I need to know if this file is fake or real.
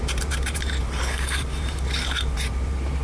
fake